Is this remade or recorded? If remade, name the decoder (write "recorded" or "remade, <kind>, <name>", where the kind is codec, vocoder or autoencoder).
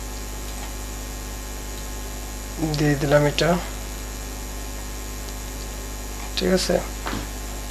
recorded